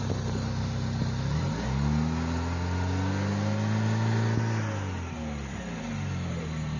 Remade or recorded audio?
recorded